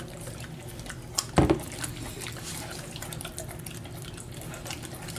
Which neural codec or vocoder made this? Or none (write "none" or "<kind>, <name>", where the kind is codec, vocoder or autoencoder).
none